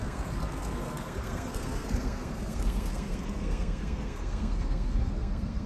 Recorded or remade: remade